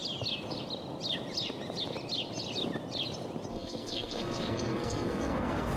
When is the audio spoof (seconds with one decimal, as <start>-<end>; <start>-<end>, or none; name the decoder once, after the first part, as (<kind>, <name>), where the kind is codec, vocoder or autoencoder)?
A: 3.5-5.8 (codec, SNAC)